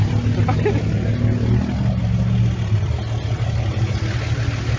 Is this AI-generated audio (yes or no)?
no